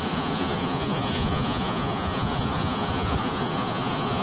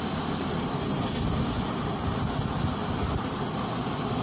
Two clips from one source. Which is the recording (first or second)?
second